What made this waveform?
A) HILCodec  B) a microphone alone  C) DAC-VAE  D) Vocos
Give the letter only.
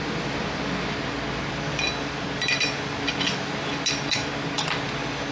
B